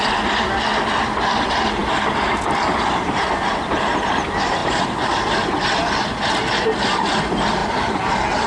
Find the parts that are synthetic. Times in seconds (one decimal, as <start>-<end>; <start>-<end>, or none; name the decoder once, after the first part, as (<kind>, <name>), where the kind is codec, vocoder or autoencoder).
none